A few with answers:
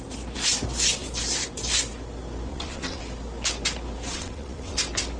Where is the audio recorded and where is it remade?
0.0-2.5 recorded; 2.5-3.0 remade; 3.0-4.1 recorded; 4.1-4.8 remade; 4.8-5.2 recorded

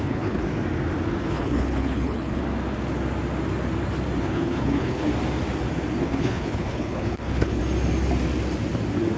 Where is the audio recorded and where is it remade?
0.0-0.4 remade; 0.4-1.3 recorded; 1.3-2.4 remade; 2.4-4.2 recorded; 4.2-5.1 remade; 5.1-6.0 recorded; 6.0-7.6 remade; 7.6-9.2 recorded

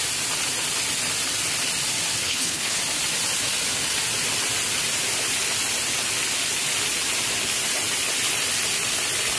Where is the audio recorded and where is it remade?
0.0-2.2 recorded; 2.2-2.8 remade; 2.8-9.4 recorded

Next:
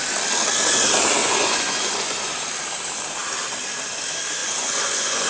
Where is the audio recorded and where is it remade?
0.0-1.2 recorded; 1.2-2.3 remade; 2.3-4.4 recorded; 4.4-5.3 remade